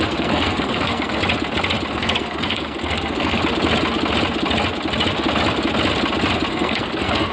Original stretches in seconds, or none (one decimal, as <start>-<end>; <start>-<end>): 1.2-1.9; 3.4-6.5